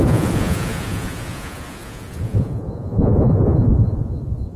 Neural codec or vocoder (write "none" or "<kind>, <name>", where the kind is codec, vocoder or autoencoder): vocoder, Vocos